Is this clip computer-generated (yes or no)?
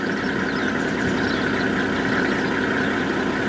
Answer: no